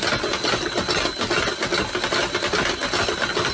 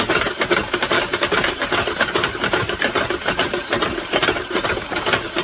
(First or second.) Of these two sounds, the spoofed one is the second